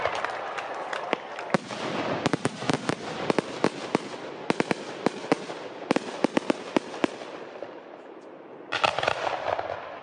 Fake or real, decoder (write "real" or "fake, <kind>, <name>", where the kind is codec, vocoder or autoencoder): real